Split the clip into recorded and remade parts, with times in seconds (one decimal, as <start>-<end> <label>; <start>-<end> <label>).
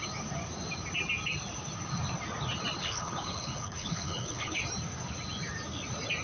0.0-2.8 recorded; 2.8-4.6 remade; 4.6-6.2 recorded